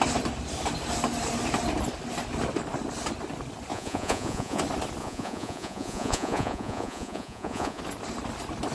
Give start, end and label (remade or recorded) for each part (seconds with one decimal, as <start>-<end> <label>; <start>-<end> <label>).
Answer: 0.0-3.7 recorded; 3.7-4.6 remade; 4.6-5.0 recorded; 5.0-7.8 remade; 7.8-8.7 recorded